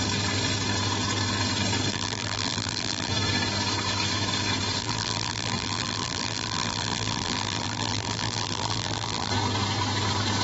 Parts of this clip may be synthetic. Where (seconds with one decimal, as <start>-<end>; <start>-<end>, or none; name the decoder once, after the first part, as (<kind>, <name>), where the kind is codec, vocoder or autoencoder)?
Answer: 1.9-3.1 (vocoder, BigVGAN v2); 4.8-9.3